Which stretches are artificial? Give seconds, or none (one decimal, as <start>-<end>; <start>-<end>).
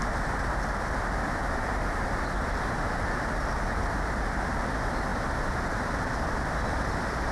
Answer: none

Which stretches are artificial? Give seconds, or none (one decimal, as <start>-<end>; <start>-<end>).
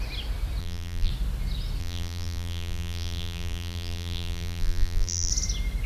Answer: 0.6-1.1; 1.8-5.3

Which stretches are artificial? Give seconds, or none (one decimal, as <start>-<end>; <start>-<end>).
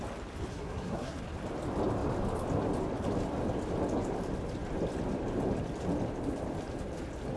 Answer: 0.5-1.2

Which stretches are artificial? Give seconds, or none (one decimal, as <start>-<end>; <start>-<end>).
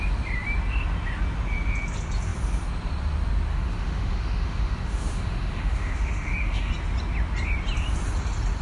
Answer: 3.5-6.7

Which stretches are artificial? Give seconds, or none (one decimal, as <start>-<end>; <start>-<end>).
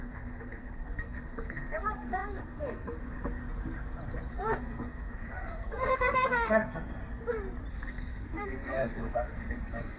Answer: 0.0-3.4; 4.3-7.0; 7.7-10.0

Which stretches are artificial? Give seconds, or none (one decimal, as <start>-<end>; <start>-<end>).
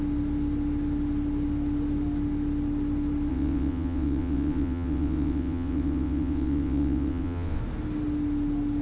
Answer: 3.3-7.6